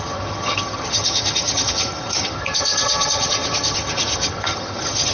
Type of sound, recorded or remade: remade